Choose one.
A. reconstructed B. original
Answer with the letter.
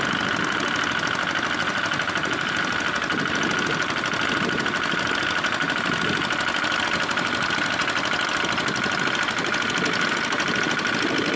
B